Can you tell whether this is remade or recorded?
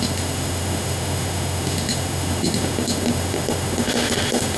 remade